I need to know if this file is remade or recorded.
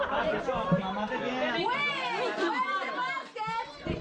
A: recorded